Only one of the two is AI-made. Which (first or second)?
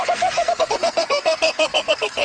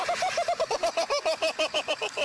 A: first